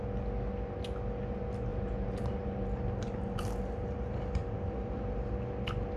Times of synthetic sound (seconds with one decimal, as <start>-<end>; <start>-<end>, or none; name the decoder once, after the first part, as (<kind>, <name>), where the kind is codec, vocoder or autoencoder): 1.7-5.3 (vocoder, BigVGAN v2)